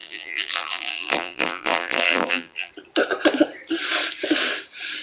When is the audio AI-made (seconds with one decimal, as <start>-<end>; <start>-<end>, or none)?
0.0-2.7